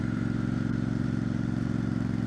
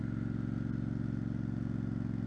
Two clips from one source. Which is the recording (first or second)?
second